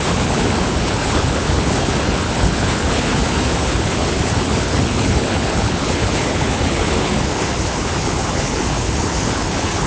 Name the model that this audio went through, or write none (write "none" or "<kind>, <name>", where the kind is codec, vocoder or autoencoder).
codec, HILCodec